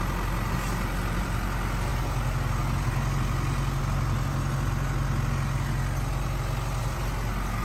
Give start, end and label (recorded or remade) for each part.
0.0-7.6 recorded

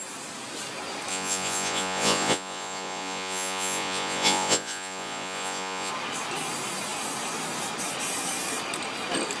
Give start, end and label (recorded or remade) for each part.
0.0-1.1 recorded; 1.1-5.9 remade; 5.9-9.4 recorded

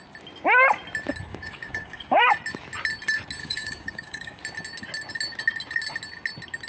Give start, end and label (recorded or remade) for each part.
0.0-1.3 recorded; 1.3-2.2 remade; 2.2-3.4 recorded; 3.4-4.4 remade; 4.4-6.7 recorded

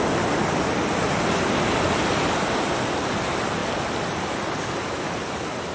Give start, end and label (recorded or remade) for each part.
0.0-3.6 recorded; 3.6-4.2 remade; 4.2-5.7 recorded

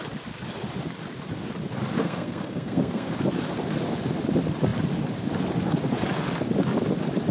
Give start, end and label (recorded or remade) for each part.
0.0-2.0 recorded; 2.0-3.1 remade; 3.1-7.3 recorded